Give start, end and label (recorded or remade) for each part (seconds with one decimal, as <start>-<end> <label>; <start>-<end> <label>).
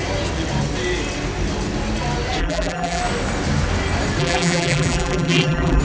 0.0-2.4 recorded; 2.4-3.0 remade; 3.0-4.2 recorded; 4.2-5.8 remade